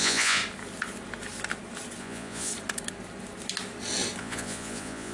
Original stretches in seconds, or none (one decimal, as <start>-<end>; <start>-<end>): 0.4-2.0; 2.5-4.2